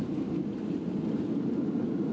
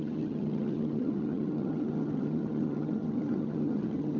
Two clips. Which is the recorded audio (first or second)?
first